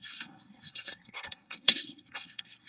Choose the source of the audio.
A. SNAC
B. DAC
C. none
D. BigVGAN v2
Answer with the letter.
A